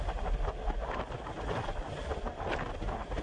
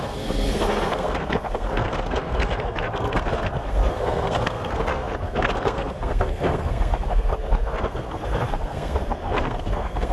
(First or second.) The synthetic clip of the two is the second